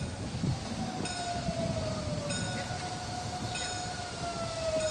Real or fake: real